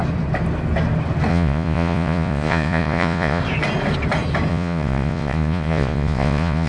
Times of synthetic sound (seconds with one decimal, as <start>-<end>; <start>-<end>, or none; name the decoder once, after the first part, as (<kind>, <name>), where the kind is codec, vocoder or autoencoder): 1.3-3.4 (vocoder, Vocos); 4.5-6.7